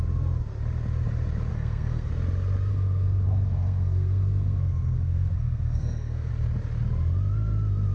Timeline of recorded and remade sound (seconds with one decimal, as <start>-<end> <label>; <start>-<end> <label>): 0.0-1.5 recorded; 1.5-2.1 remade; 2.1-2.7 recorded; 2.7-6.3 remade; 6.3-7.9 recorded